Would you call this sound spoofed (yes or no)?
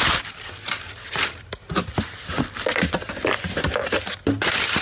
no